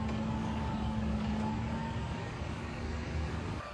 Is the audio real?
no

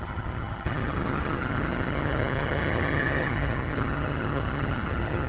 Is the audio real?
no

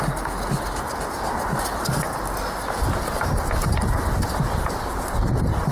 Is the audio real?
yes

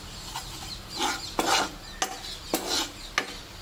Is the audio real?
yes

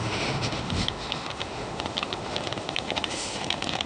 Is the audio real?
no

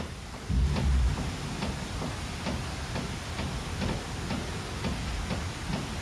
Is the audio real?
yes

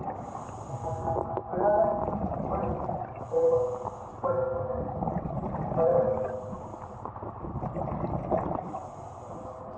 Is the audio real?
yes